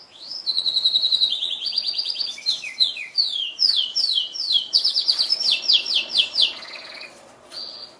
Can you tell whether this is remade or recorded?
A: remade